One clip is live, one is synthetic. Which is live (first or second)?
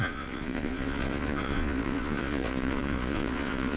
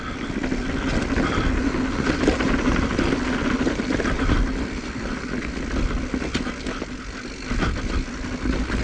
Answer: second